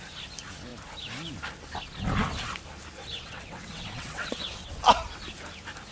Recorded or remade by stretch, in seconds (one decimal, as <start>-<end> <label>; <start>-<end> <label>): 0.0-3.0 recorded; 3.0-4.7 remade; 4.7-5.9 recorded